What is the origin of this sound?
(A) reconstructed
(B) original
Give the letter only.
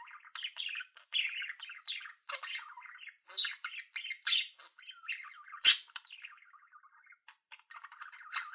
A